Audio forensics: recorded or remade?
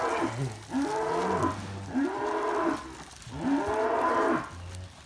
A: recorded